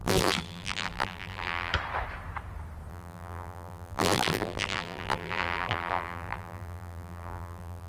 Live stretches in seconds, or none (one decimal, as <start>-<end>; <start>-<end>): 1.7-2.9